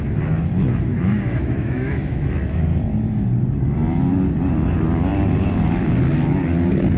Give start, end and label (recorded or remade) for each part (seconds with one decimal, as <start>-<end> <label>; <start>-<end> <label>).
0.0-0.9 recorded; 0.9-2.7 remade; 2.7-7.0 recorded